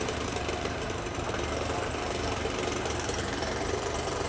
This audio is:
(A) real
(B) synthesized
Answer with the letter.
B